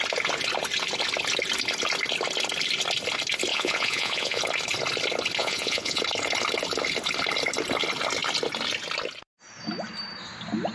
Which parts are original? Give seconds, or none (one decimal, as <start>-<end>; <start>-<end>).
0.0-3.5; 4.4-5.4; 6.0-10.7